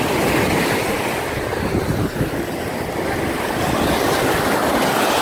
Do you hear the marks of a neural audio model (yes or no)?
no